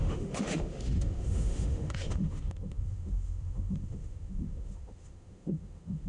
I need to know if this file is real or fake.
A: fake